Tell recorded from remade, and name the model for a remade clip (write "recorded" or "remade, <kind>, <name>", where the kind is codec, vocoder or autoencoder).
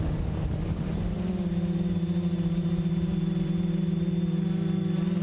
remade, vocoder, BigVGAN v2